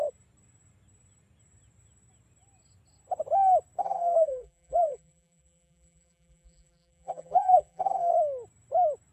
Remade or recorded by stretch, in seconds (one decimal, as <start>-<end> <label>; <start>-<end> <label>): 0.0-3.8 recorded; 3.8-8.1 remade; 8.1-9.1 recorded